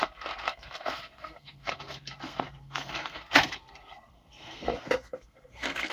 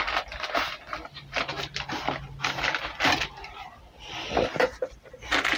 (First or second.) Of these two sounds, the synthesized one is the first